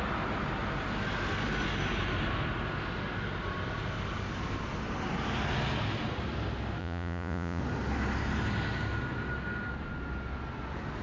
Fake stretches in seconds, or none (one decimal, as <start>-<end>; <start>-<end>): 6.8-7.6